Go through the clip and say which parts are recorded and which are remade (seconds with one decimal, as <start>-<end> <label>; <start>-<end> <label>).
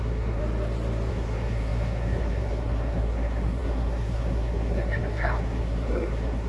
0.0-0.4 remade; 0.4-1.1 recorded; 1.1-6.5 remade